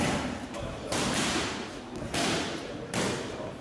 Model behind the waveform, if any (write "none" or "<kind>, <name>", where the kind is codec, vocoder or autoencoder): vocoder, BigVGAN v2